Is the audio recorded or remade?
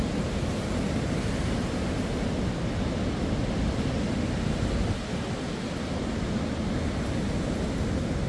recorded